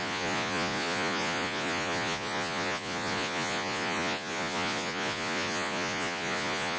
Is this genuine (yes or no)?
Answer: no